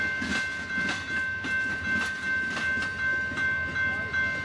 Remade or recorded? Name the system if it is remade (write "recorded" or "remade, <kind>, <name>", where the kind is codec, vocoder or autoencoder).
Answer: recorded